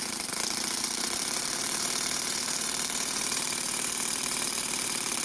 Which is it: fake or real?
fake